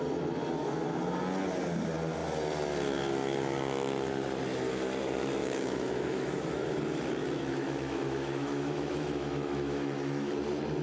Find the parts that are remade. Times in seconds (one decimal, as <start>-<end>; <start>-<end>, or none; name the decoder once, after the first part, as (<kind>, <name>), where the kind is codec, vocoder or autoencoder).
5.4-6.8 (autoencoder, DAC-VAE); 7.2-10.3